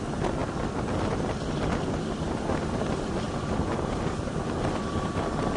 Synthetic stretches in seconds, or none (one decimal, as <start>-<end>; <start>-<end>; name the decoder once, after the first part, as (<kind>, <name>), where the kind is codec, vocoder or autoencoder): none